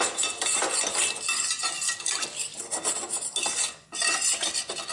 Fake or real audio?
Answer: real